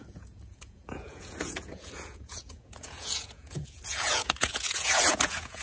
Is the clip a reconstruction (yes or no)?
yes